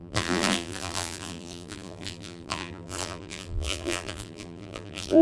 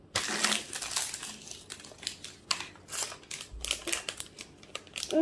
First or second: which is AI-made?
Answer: first